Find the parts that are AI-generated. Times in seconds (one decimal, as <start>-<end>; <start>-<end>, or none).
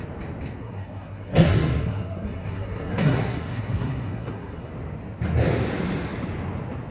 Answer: 0.6-4.7